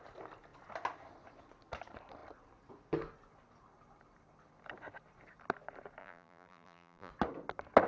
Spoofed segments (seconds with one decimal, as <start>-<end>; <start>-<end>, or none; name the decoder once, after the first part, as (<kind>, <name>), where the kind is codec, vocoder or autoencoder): 6.0-7.1 (vocoder, BigVGAN v2)